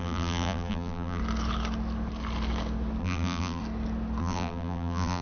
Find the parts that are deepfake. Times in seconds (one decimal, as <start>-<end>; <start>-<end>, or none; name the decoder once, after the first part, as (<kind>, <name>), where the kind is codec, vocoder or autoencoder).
0.0-1.2 (vocoder, BigVGAN v2); 3.0-3.6; 4.2-5.2